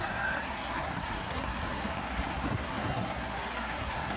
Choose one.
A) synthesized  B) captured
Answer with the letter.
A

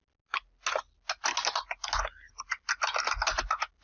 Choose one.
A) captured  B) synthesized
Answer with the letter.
A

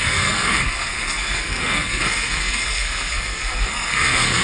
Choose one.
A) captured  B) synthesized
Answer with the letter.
B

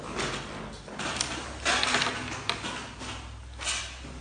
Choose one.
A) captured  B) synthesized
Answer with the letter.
A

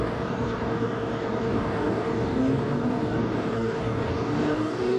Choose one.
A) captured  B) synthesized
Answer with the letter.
B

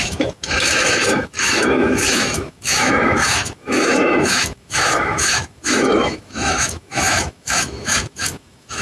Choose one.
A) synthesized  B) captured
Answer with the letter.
A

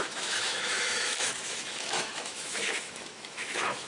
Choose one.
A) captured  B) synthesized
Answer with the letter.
B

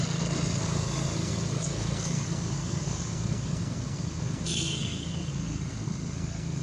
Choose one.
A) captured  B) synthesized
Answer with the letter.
B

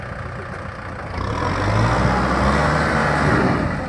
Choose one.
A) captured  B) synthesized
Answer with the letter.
A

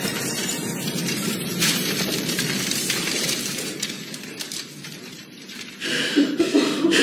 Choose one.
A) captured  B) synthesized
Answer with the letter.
B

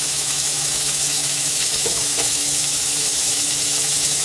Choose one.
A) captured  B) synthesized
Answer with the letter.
B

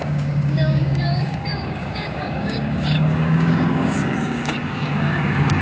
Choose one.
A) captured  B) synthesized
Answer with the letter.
B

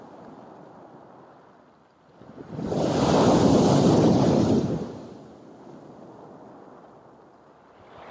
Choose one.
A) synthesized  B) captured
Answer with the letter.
B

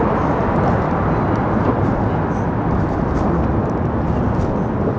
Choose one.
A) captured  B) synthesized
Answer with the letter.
A